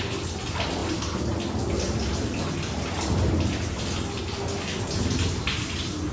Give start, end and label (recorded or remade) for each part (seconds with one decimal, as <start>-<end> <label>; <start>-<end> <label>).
0.0-6.1 recorded